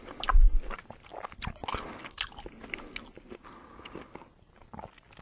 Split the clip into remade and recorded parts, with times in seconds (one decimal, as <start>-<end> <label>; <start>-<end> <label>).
0.0-5.2 recorded